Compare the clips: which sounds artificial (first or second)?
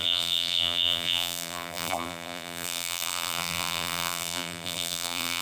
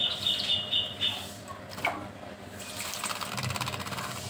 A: first